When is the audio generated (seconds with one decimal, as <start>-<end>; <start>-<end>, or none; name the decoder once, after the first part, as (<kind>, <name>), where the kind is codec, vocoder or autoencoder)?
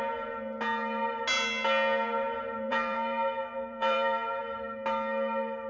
2.7-4.4 (vocoder, BigVGAN v2)